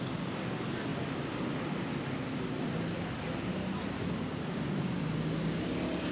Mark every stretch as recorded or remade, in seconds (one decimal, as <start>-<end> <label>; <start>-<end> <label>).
0.0-6.1 recorded